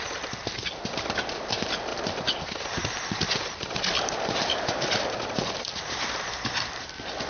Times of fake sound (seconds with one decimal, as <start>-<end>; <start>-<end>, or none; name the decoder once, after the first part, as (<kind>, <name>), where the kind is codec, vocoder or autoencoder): none